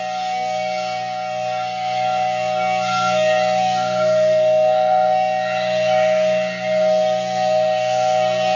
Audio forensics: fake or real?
fake